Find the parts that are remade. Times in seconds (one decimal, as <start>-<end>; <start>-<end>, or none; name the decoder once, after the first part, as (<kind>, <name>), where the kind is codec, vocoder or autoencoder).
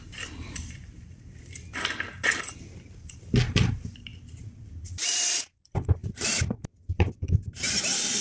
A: 0.0-2.1 (vocoder, BigVGAN v2); 3.0-8.2